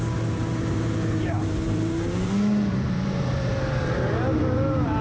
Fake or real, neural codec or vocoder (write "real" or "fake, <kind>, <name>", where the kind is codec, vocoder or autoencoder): fake, vocoder, BigVGAN v2